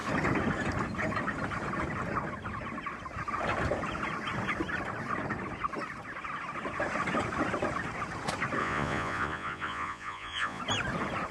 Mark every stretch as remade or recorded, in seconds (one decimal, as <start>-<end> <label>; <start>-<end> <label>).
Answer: 0.0-8.6 recorded; 8.6-10.6 remade; 10.6-11.3 recorded